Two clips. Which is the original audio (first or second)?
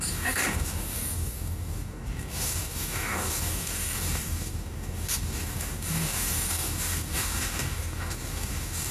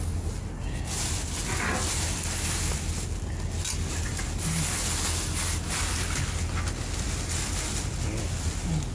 second